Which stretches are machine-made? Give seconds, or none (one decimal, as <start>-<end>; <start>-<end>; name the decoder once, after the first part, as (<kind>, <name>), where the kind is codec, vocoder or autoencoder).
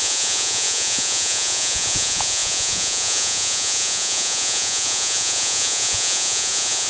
0.0-6.9 (vocoder, Vocos)